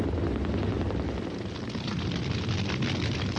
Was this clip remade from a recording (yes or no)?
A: no